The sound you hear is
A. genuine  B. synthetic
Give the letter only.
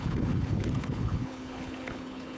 B